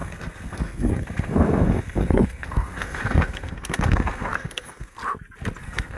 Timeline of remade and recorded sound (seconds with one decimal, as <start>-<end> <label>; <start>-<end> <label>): 0.0-5.0 remade; 5.0-5.6 recorded; 5.6-6.0 remade